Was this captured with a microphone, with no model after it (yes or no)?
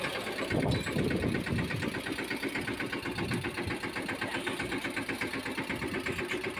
yes